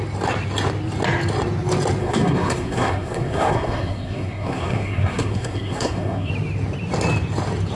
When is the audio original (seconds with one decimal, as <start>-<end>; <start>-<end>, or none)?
0.0-2.0; 6.3-7.7